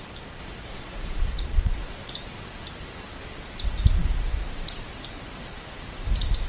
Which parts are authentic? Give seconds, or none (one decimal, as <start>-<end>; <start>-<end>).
0.0-0.7; 1.7-6.5